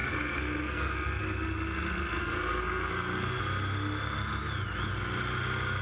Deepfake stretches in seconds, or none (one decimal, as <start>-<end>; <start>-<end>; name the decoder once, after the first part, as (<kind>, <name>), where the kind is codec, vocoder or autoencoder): 0.0-1.2 (codec, SNAC); 2.2-3.4